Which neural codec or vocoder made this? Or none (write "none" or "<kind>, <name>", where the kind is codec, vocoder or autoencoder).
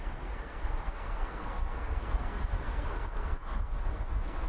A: codec, SNAC